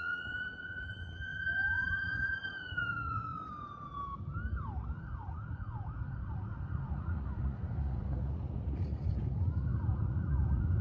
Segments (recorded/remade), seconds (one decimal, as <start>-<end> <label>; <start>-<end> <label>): 0.0-3.3 remade; 3.3-5.0 recorded; 5.0-10.8 remade